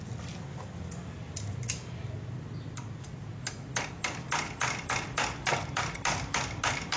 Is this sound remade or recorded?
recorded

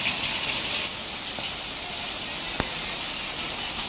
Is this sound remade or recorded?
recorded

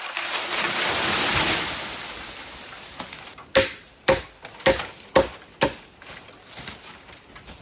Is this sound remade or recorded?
recorded